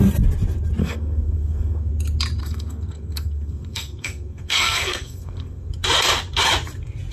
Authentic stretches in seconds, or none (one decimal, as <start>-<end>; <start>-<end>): 0.0-0.8; 1.9-2.4; 5.7-7.1